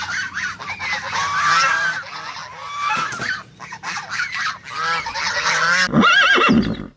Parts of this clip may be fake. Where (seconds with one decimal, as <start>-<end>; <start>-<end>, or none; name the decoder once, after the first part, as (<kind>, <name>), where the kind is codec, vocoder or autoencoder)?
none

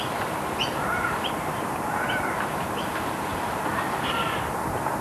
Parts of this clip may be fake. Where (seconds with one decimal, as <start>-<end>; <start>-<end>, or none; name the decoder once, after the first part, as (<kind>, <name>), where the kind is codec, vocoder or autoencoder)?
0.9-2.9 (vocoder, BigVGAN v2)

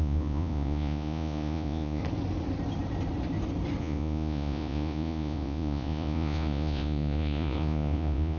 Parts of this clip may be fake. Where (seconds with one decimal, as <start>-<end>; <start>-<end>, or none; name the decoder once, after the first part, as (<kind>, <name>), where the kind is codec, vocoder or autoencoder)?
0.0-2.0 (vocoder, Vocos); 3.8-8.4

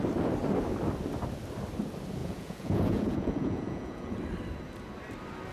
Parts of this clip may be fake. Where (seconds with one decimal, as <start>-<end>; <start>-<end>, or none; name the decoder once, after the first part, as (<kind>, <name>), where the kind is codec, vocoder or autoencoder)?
2.2-4.1 (vocoder, Vocos)

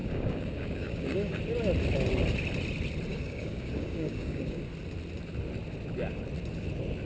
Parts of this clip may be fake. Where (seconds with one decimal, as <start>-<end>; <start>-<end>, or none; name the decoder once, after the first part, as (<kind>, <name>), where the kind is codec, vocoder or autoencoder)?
0.0-1.4 (codec, DAC); 3.1-4.7

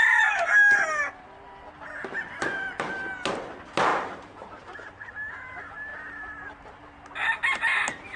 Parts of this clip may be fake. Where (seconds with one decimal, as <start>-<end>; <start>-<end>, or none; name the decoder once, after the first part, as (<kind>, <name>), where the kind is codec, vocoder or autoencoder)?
3.9-5.1 (vocoder, BigVGAN v2)